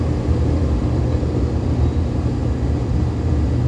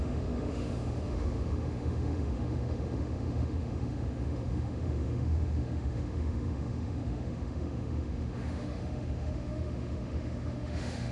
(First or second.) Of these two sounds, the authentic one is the first